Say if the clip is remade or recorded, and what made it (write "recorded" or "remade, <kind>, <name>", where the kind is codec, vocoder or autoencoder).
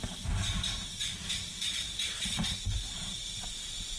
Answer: remade, vocoder, BigVGAN v2